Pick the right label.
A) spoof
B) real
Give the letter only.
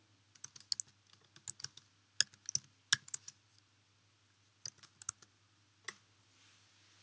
B